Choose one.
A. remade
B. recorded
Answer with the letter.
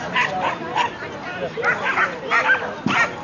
B